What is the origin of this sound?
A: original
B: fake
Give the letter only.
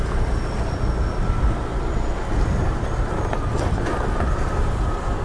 A